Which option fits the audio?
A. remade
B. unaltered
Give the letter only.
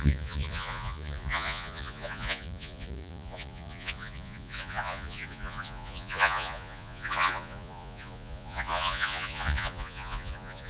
A